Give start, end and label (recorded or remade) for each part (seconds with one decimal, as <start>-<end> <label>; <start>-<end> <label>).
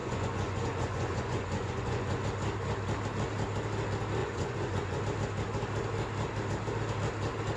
0.0-2.2 remade; 2.2-4.2 recorded; 4.2-5.0 remade; 5.0-7.6 recorded